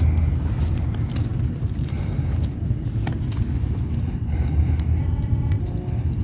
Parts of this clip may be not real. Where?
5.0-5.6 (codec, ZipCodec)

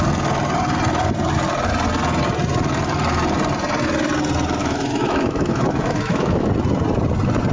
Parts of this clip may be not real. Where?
4.6-6.5 (autoencoder, DAC-VAE)

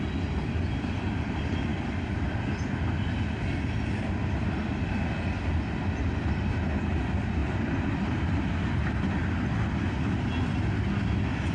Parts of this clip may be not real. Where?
none

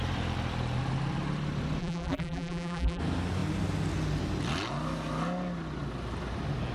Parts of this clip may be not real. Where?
1.8-3.0 (vocoder, BigVGAN v2)

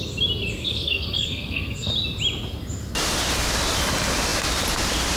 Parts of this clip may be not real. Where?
0.6-1.9 (codec, SNAC)